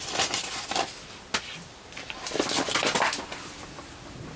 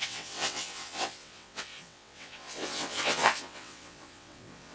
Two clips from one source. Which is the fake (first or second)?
second